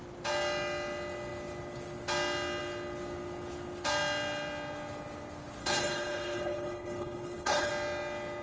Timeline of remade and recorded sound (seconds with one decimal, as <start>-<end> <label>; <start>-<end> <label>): 0.0-5.6 recorded; 5.6-7.7 remade; 7.7-8.4 recorded